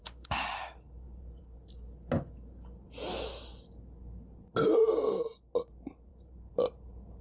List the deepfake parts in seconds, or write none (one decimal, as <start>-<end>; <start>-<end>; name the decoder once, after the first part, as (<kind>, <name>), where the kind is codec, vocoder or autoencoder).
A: 0.0-1.4 (vocoder, BigVGAN v2); 6.1-7.2